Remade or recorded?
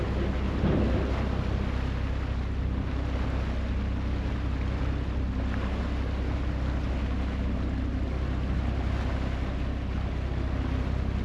recorded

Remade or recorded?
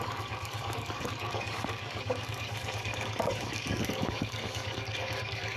remade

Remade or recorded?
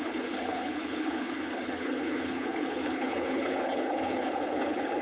remade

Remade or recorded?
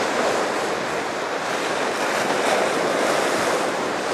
recorded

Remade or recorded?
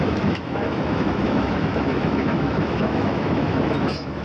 remade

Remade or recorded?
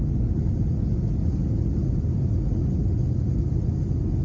recorded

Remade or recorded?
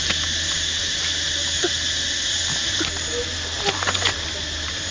recorded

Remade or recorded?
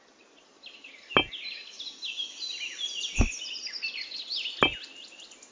recorded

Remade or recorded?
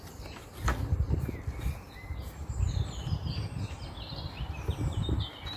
recorded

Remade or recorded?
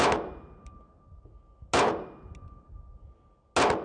recorded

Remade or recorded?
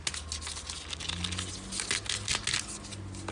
recorded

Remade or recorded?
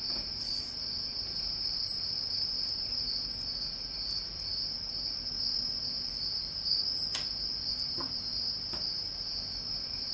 recorded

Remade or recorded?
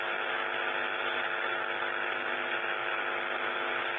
remade